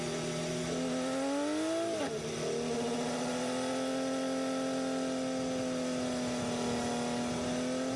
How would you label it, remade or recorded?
recorded